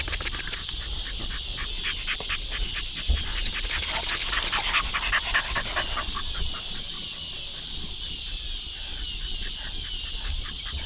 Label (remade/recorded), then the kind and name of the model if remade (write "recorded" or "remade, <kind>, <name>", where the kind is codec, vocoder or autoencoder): recorded